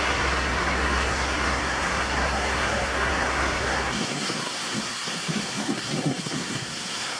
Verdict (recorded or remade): remade